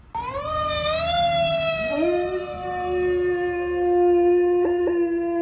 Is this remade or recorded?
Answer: recorded